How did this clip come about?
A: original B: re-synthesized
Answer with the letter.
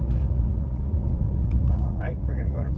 B